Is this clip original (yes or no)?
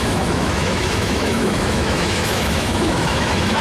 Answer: no